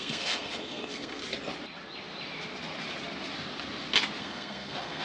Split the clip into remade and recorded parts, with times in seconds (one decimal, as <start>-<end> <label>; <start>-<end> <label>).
0.0-1.2 remade; 1.2-4.2 recorded; 4.2-5.0 remade